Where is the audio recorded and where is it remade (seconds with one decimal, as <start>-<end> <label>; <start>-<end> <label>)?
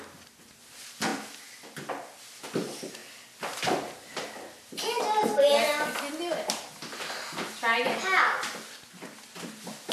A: 0.0-9.9 recorded